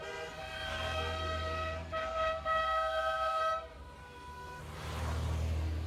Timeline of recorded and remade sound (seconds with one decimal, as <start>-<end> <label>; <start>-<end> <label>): 0.0-0.4 recorded; 0.4-3.4 remade; 3.4-4.0 recorded; 4.0-4.6 remade; 4.6-5.9 recorded